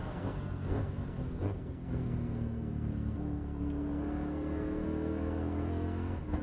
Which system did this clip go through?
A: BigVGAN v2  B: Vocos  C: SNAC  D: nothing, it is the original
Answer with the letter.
C